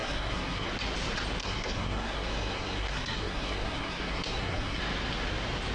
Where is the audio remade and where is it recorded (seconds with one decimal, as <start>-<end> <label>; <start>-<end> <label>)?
0.0-0.7 remade; 0.7-1.4 recorded; 1.4-4.8 remade; 4.8-5.7 recorded